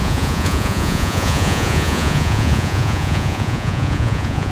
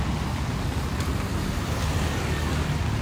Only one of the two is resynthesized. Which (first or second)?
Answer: first